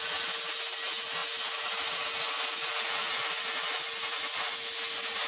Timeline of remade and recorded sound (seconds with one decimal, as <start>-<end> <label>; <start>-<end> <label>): 0.0-5.3 recorded

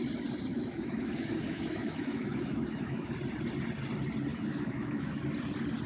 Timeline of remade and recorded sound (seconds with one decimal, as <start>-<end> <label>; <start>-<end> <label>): 0.0-0.5 recorded; 0.5-3.1 remade; 3.1-4.3 recorded; 4.3-5.2 remade; 5.2-5.9 recorded

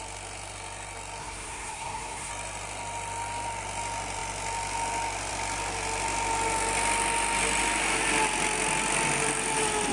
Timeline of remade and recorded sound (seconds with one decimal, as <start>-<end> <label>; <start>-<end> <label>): 0.0-1.2 recorded; 1.2-2.3 remade; 2.3-9.9 recorded